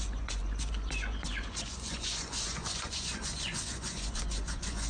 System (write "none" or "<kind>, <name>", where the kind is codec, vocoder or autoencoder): vocoder, Vocos